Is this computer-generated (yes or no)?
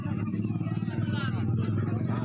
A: no